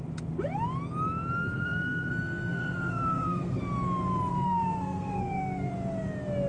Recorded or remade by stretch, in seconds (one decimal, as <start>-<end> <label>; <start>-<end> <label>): 0.0-1.5 recorded; 1.5-3.6 remade; 3.6-4.3 recorded; 4.3-5.7 remade; 5.7-6.5 recorded